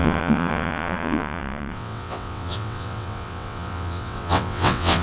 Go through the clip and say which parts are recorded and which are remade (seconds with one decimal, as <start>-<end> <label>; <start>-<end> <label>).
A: 0.0-5.0 remade